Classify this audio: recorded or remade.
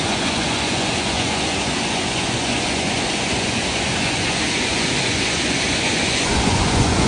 remade